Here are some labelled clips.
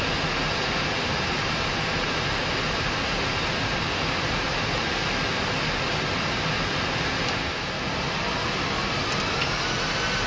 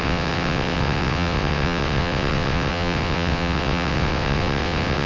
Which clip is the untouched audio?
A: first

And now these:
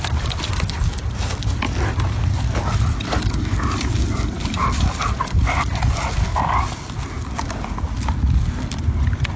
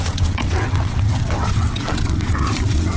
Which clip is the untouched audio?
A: first